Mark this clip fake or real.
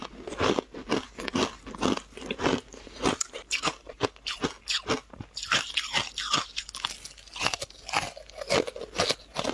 real